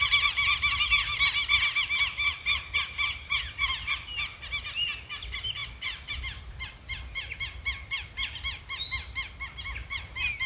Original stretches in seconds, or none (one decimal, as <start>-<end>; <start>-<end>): 0.0-5.6; 8.8-10.5